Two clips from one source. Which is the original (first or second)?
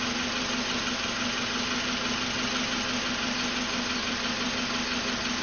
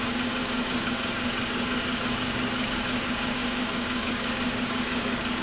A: first